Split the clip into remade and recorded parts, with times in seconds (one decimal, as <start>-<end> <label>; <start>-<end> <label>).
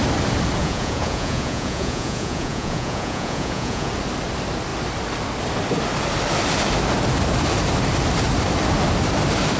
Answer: 0.0-0.6 recorded; 0.6-3.9 remade; 3.9-9.6 recorded